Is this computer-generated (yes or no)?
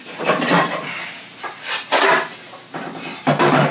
no